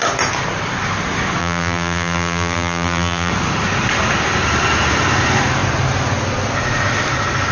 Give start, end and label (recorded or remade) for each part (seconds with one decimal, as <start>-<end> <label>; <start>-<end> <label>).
0.0-1.4 recorded; 1.4-3.3 remade; 3.3-7.5 recorded